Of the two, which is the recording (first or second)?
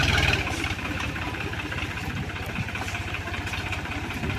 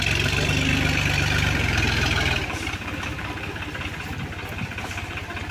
second